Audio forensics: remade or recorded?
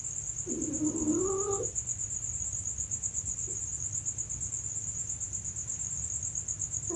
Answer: recorded